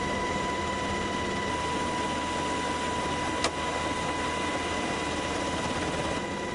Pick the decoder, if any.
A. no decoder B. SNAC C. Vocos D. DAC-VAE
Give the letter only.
A